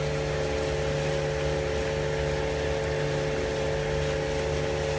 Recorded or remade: recorded